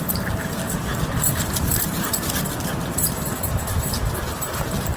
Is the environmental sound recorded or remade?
remade